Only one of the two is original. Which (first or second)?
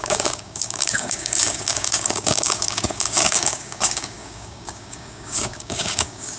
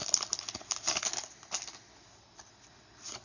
second